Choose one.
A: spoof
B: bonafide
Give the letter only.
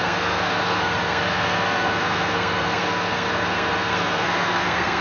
A